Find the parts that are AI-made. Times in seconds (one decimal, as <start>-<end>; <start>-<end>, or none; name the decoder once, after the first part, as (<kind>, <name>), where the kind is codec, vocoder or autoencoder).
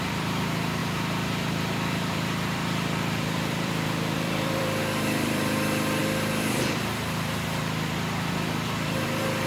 0.0-9.5 (vocoder, BigVGAN v2)